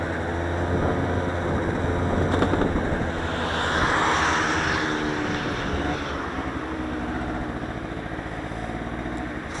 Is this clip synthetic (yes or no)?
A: no